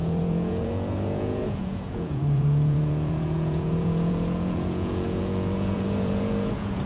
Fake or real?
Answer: fake